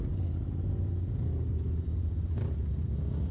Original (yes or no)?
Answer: yes